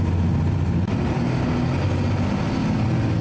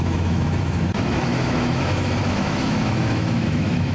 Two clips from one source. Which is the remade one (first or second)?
second